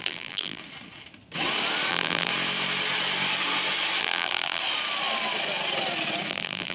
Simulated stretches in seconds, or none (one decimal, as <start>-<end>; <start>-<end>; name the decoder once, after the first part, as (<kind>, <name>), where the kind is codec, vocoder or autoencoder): 0.0-0.6 (vocoder, BigVGAN v2); 1.9-2.3; 4.0-4.6; 6.3-6.7